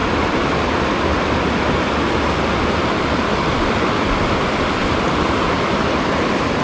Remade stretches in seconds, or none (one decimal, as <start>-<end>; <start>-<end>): none